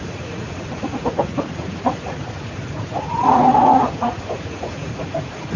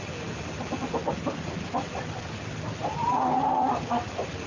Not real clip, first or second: first